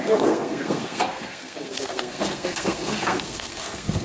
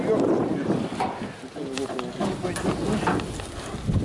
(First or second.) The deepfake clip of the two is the first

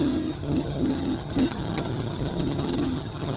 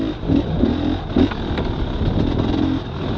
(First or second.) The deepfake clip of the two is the first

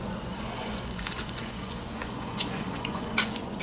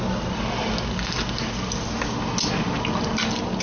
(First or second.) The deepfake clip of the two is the first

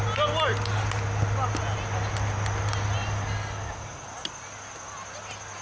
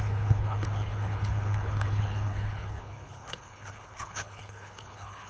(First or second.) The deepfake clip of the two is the second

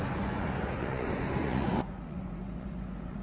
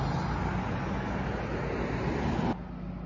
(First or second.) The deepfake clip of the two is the first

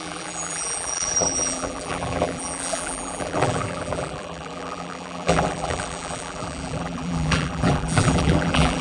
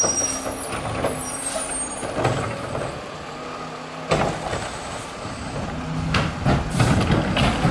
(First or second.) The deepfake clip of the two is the first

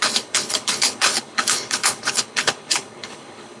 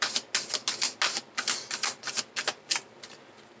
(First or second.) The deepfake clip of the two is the first